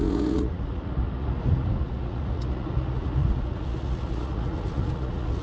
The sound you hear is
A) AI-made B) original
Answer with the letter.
A